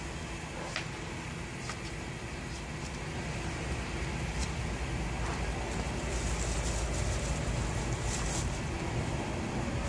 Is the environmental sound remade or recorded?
recorded